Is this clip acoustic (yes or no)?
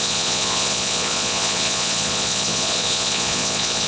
no